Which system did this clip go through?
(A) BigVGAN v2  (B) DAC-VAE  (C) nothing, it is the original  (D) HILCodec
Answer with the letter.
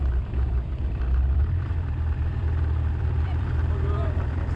A